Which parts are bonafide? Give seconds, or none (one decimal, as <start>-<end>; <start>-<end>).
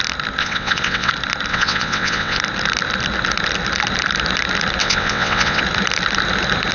0.0-0.4; 1.1-1.5; 2.4-4.8; 5.6-6.7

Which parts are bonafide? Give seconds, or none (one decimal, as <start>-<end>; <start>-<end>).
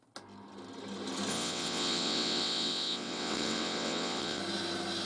0.0-1.3; 4.4-5.1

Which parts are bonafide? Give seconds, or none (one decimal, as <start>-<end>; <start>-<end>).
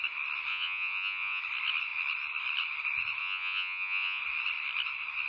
0.0-0.5; 1.4-3.2; 4.2-5.3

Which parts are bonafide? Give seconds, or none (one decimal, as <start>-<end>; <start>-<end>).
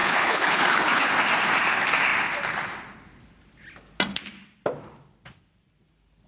1.1-6.3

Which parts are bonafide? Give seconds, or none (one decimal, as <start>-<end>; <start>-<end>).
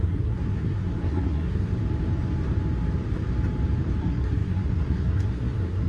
1.7-4.0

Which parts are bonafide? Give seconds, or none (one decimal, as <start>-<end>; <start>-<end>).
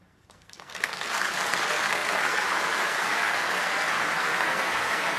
none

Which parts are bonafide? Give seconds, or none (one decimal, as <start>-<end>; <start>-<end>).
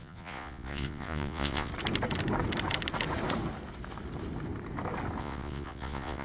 1.7-5.2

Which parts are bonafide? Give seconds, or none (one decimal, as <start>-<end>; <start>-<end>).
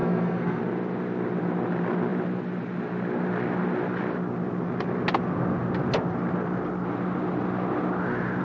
0.6-8.4